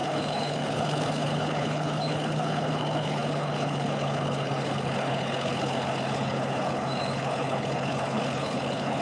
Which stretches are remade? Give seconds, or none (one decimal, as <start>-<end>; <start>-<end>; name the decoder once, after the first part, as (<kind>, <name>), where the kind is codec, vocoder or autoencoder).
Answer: 0.0-9.0 (codec, HILCodec)